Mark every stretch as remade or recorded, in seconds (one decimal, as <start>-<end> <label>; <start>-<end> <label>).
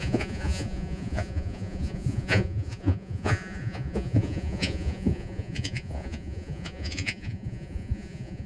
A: 0.0-8.5 remade